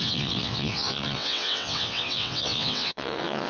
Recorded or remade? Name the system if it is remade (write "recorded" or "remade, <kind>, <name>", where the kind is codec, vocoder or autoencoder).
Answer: remade, vocoder, WaveNeXt